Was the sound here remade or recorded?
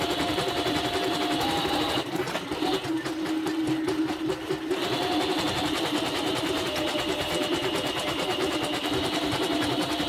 remade